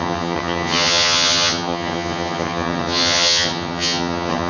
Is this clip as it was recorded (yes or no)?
no